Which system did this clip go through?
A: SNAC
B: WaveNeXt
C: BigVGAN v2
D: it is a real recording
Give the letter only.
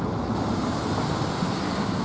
D